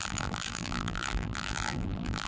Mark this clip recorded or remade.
remade